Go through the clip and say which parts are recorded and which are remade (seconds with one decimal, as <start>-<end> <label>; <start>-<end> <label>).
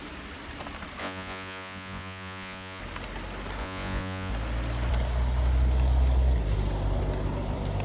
0.0-1.0 recorded; 1.0-2.8 remade; 2.8-3.6 recorded; 3.6-4.3 remade; 4.3-7.8 recorded